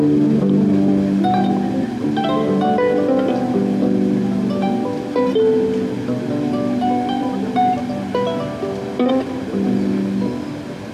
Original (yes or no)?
yes